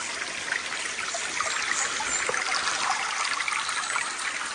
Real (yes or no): yes